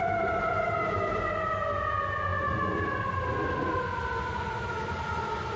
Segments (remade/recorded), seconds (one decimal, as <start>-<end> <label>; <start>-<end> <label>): 0.0-5.6 recorded